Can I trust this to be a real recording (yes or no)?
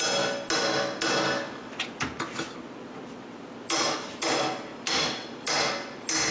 yes